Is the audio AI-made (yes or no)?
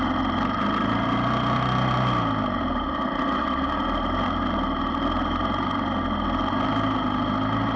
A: no